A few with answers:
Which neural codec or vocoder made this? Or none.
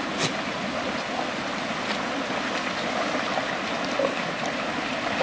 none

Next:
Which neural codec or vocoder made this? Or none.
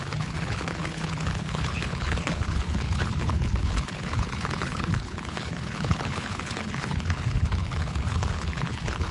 codec, HILCodec